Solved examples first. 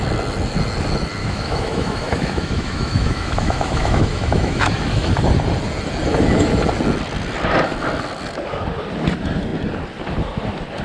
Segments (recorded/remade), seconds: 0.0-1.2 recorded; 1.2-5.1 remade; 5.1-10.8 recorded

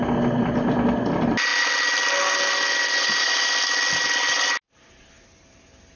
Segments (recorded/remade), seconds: 0.0-6.0 recorded

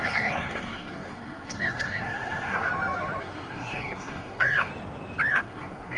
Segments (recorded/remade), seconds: 0.0-2.7 remade; 2.7-3.2 recorded; 3.2-4.7 remade; 4.7-5.3 recorded; 5.3-6.0 remade

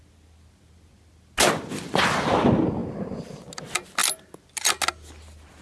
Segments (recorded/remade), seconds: 0.0-5.6 recorded

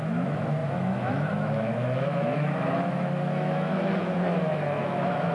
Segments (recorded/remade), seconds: 0.0-5.3 remade